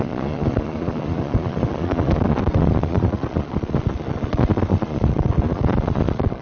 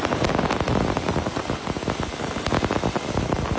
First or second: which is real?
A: second